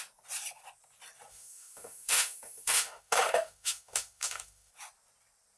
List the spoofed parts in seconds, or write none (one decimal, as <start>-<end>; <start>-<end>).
1.3-4.7